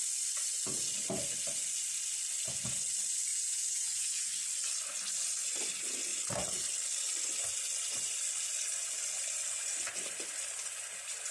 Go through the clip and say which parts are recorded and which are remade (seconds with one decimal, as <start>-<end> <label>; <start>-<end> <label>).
0.0-3.3 recorded; 3.3-4.3 remade; 4.3-11.3 recorded